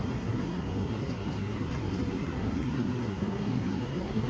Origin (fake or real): fake